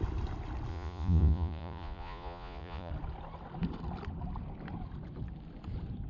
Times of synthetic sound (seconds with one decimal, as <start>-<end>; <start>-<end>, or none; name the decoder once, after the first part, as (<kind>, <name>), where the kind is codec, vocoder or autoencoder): 0.7-2.9 (vocoder, Vocos)